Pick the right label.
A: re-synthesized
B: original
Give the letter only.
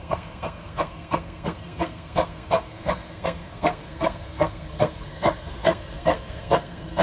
A